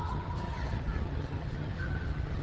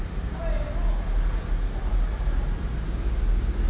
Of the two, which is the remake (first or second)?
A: first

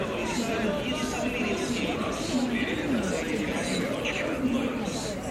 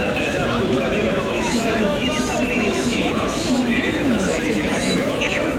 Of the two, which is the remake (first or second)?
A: second